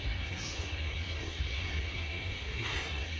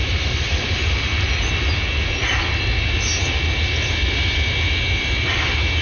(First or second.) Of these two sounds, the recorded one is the second